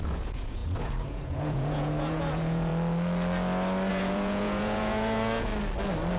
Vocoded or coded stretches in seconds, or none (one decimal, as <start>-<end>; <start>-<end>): 0.0-2.7; 3.9-5.5